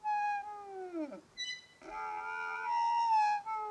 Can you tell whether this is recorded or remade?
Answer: recorded